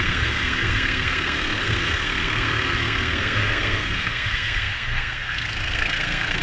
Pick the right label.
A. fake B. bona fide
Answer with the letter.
A